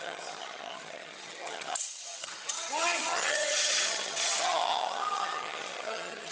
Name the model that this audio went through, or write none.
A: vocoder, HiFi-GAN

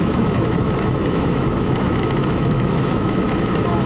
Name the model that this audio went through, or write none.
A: autoencoder, DAC-VAE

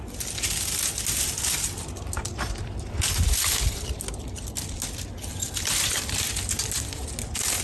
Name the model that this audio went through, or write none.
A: none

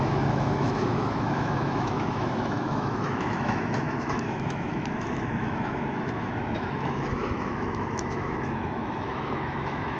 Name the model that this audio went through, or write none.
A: autoencoder, DAC-VAE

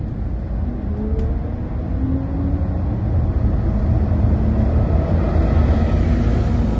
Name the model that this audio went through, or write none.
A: none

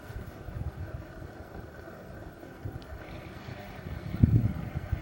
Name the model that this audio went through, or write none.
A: codec, SNAC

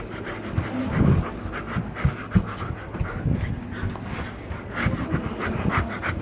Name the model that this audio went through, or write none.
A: none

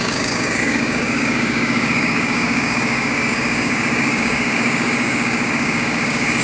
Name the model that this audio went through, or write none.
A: codec, DAC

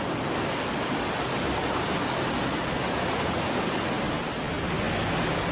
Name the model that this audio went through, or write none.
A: none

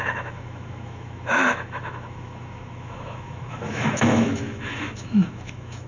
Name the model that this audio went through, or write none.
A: autoencoder, DAC-VAE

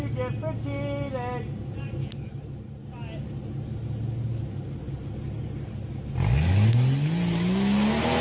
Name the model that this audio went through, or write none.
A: none